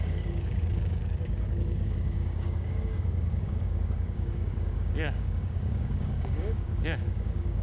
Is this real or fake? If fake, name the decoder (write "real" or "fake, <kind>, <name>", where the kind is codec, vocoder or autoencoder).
fake, codec, DAC